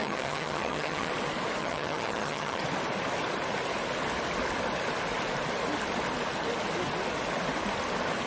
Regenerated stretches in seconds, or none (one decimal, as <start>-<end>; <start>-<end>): 0.0-1.1; 1.6-2.6